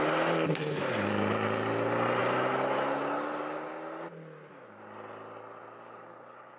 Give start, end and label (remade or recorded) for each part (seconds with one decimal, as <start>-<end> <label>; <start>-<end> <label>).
0.0-6.6 recorded